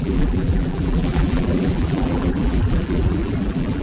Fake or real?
fake